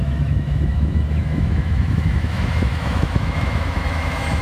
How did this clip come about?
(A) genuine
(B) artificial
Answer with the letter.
B